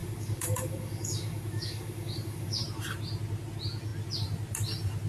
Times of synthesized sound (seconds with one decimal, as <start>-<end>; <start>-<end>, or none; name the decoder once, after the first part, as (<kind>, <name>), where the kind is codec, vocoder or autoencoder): 0.0-2.6 (codec, DAC)